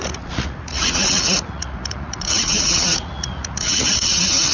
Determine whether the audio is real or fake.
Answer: fake